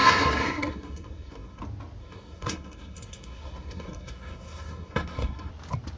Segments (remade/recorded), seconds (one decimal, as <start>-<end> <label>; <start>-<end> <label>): 0.0-1.6 remade; 1.6-2.0 recorded; 2.0-5.5 remade; 5.5-6.0 recorded